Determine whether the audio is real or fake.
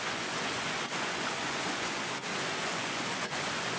fake